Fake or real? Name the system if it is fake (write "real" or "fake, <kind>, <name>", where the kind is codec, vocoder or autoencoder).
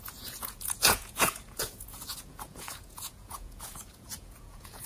fake, vocoder, Vocos